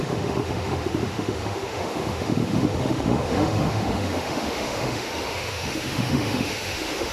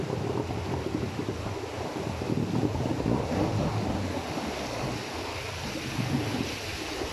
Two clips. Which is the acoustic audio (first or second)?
second